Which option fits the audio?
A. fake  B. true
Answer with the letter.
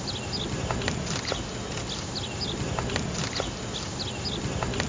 B